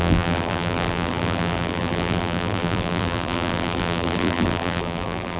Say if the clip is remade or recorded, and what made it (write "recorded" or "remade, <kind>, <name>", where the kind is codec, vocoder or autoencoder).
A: remade, vocoder, BigVGAN v2